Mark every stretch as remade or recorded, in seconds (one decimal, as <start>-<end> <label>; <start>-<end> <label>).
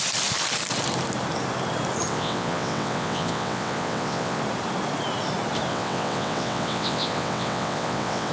0.0-2.1 recorded; 2.1-4.4 remade; 4.4-5.7 recorded; 5.7-8.3 remade